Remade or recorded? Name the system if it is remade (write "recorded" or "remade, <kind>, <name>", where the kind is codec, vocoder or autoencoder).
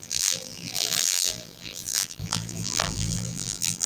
remade, vocoder, BigVGAN v2